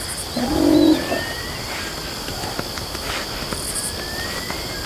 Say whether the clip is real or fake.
real